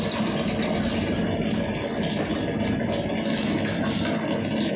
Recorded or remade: recorded